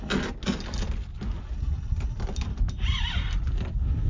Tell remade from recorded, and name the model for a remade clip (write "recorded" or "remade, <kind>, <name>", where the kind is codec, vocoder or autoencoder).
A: recorded